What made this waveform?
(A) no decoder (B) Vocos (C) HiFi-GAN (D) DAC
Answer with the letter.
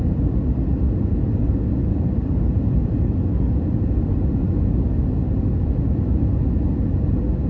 A